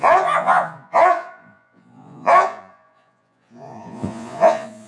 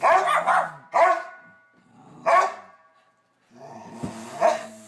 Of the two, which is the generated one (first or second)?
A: first